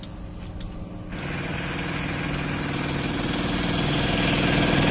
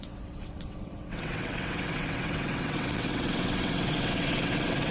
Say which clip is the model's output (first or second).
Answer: second